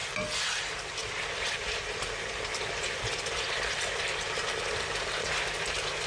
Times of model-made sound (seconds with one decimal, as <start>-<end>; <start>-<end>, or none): 0.0-6.1